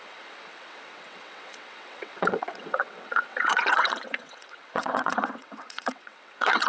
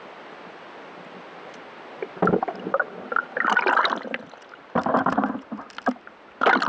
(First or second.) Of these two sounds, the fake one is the first